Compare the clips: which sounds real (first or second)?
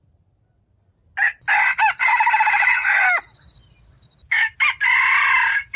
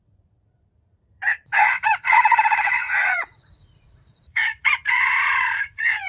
first